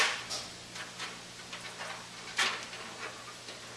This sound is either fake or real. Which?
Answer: real